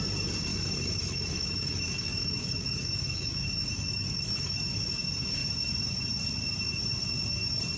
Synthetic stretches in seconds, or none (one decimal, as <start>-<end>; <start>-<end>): 0.5-4.9